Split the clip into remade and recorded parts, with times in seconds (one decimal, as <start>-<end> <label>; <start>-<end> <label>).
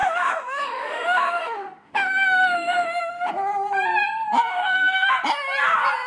0.0-3.3 remade; 3.3-4.5 recorded; 4.5-5.1 remade; 5.1-6.1 recorded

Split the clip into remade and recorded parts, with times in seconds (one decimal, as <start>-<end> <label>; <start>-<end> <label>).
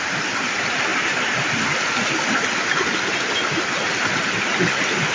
0.0-5.1 recorded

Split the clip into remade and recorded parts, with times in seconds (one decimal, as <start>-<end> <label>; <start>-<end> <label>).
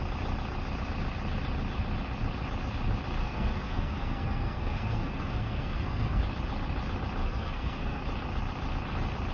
0.0-3.2 recorded; 3.2-6.2 remade; 6.2-7.2 recorded; 7.2-8.0 remade; 8.0-9.3 recorded